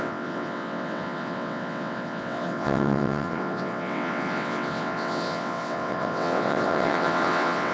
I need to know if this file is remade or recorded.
remade